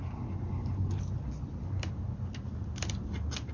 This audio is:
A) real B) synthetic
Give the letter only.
A